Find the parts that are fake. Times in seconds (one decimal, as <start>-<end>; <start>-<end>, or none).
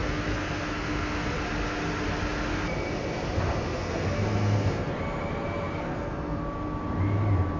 0.0-1.3; 3.7-4.9; 5.8-6.4